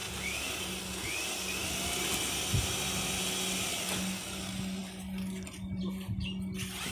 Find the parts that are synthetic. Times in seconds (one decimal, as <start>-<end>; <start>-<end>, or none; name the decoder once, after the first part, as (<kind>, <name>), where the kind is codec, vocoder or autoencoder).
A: none